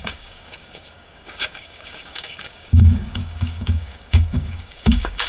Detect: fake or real fake